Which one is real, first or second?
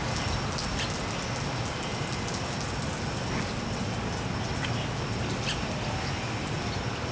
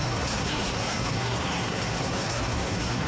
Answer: first